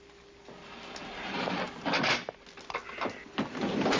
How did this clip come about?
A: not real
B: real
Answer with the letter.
B